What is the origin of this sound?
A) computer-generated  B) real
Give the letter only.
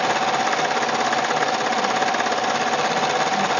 B